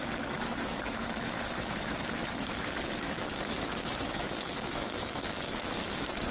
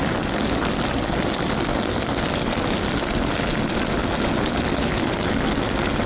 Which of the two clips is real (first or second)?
second